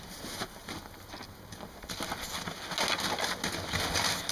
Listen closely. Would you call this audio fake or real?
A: real